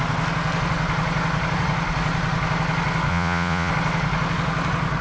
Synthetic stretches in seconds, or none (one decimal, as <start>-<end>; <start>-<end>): 3.1-3.7